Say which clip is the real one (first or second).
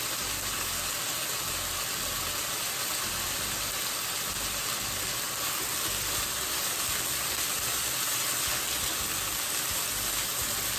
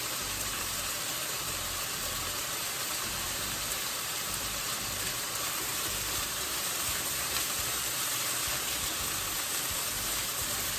first